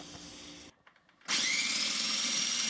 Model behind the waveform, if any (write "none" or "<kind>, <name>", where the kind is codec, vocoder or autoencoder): none